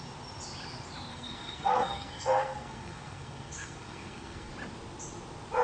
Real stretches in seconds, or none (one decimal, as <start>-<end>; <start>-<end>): 0.0-1.1; 4.5-5.6